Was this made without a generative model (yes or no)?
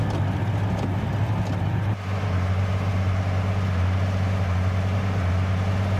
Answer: yes